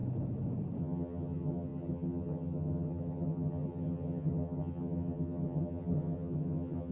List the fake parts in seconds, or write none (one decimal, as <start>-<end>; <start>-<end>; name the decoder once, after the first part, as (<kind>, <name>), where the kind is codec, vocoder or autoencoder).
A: 0.8-6.9 (vocoder, HiFi-GAN)